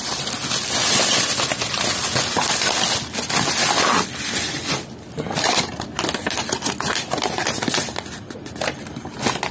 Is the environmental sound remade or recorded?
recorded